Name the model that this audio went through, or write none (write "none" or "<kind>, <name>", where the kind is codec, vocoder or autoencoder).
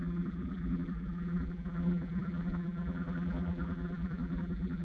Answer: vocoder, BigVGAN v2